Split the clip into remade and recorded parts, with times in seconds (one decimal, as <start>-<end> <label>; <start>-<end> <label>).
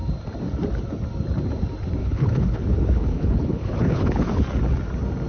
0.0-2.0 recorded; 2.0-4.4 remade; 4.4-5.3 recorded